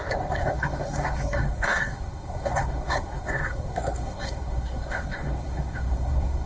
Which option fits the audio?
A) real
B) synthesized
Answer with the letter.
B